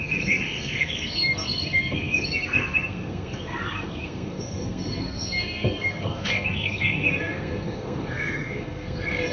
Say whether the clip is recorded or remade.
remade